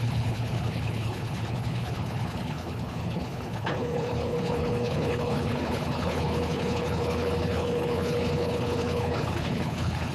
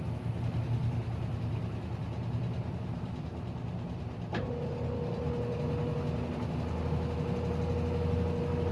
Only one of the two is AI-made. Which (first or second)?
first